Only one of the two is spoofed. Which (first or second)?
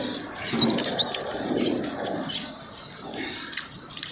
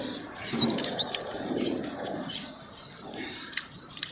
second